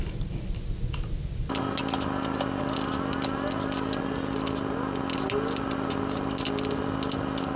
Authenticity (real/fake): real